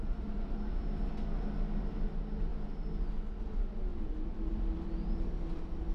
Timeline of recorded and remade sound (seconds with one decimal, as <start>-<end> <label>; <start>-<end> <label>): 0.0-5.9 recorded

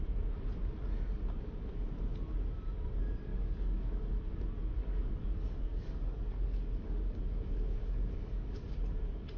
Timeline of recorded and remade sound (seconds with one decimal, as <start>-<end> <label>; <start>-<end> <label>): 0.0-3.3 recorded; 3.3-4.1 remade; 4.1-4.8 recorded; 4.8-8.8 remade; 8.8-9.4 recorded

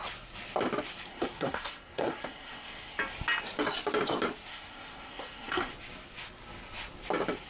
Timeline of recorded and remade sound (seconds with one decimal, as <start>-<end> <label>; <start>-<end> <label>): 0.0-1.1 recorded; 1.1-3.0 remade; 3.0-4.5 recorded; 4.5-5.7 remade; 5.7-7.5 recorded

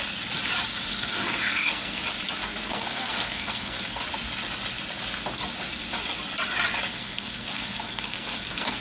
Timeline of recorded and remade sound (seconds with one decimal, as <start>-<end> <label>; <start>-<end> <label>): 0.0-0.9 recorded; 0.9-2.0 remade; 2.0-2.4 recorded; 2.4-4.0 remade; 4.0-6.9 recorded; 6.9-8.8 remade

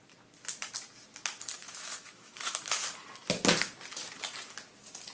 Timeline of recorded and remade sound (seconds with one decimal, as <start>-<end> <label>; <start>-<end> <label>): 0.0-1.6 recorded; 1.6-2.5 remade; 2.5-5.1 recorded

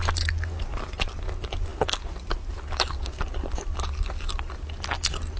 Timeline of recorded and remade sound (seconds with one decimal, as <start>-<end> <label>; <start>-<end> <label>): 0.0-5.4 recorded

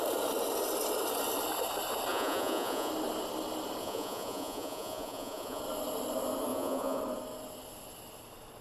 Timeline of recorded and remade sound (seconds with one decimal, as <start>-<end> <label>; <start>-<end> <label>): 0.0-2.1 recorded; 2.1-2.9 remade; 2.9-3.8 recorded; 3.8-5.6 remade; 5.6-6.5 recorded; 6.5-7.0 remade; 7.0-8.6 recorded